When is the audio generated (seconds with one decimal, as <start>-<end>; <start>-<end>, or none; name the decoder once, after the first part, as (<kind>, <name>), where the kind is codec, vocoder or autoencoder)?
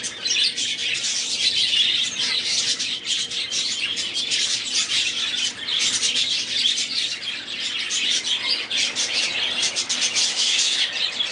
10.3-10.8 (codec, SNAC)